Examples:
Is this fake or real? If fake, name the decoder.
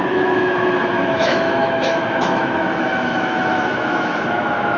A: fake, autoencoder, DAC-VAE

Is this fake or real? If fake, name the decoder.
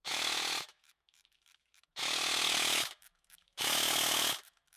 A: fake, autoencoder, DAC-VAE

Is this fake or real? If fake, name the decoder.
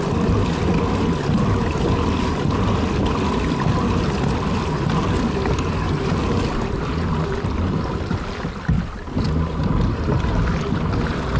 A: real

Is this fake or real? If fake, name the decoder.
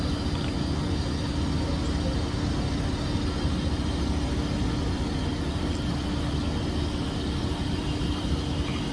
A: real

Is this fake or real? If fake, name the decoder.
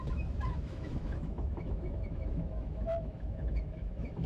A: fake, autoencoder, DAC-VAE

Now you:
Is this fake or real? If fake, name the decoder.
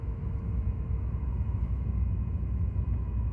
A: fake, autoencoder, DAC-VAE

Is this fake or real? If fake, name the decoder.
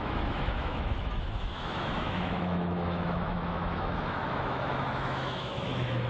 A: fake, autoencoder, DAC-VAE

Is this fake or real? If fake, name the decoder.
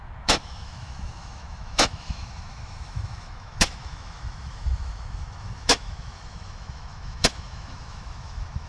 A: fake, autoencoder, DAC-VAE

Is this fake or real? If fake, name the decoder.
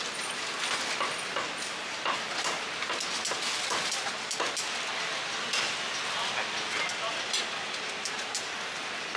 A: real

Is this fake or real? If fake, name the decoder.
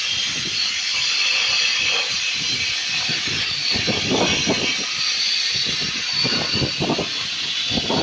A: real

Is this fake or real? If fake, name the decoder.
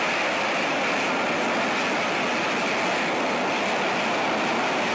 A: real